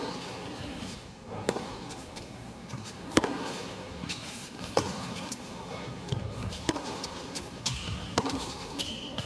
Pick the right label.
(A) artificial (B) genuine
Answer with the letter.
A